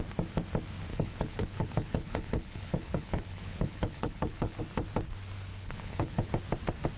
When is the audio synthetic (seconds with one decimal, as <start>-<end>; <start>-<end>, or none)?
0.9-4.6; 5.5-6.3